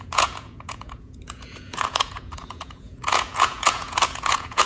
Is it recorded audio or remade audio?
remade